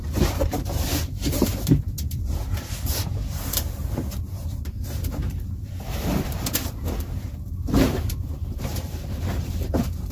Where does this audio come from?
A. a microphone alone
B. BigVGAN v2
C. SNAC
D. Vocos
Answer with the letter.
B